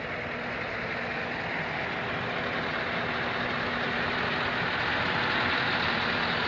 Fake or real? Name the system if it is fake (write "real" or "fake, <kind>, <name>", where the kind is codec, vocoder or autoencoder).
real